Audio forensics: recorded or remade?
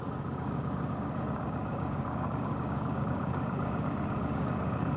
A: remade